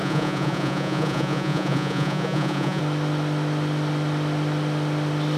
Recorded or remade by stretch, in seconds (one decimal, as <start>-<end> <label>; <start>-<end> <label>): 0.0-2.8 remade; 2.8-5.4 recorded